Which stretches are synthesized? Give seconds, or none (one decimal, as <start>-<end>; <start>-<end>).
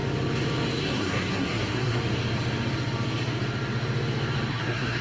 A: 0.8-2.0; 4.5-5.0